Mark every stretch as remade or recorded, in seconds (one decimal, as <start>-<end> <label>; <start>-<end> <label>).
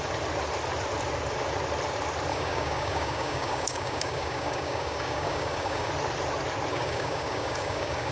0.0-2.3 recorded; 2.3-5.9 remade; 5.9-6.7 recorded; 6.7-8.1 remade